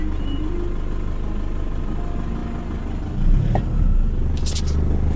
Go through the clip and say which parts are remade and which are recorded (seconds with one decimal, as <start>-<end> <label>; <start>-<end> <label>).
0.0-5.2 recorded